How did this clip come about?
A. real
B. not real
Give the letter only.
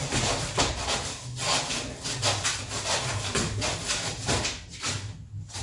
A